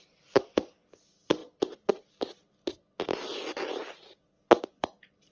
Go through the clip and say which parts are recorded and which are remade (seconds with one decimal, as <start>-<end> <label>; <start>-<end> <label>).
0.0-1.4 remade; 1.4-4.6 recorded; 4.6-5.3 remade